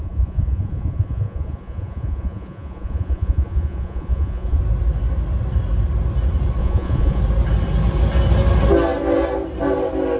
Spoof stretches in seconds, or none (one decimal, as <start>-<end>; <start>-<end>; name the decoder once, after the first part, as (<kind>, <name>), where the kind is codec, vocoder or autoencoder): 0.0-4.6 (vocoder, Vocos); 6.6-7.2